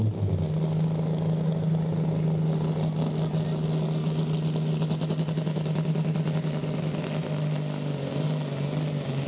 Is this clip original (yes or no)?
yes